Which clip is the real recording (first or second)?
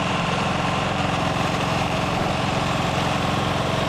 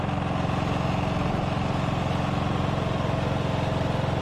second